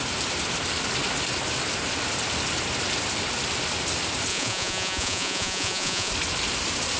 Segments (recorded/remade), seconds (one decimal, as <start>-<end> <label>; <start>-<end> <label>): 0.0-4.3 recorded; 4.3-6.1 remade; 6.1-7.0 recorded